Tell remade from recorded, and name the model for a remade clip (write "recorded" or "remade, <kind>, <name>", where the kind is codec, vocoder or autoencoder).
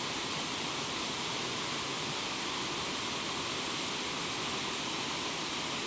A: remade, vocoder, BigVGAN v2